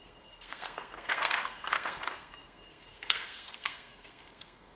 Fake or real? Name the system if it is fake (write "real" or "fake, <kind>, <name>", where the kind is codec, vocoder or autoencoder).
fake, codec, SNAC